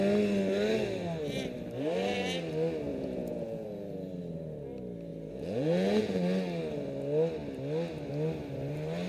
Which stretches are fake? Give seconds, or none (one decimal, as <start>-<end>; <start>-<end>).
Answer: 2.9-4.1; 5.1-6.2